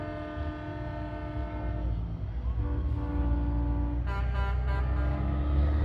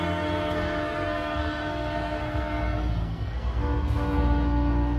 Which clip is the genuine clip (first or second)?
first